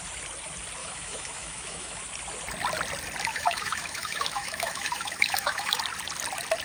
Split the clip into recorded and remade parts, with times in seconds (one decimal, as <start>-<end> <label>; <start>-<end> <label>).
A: 0.0-0.8 recorded; 0.8-2.0 remade; 2.0-3.3 recorded; 3.3-5.8 remade; 5.8-6.6 recorded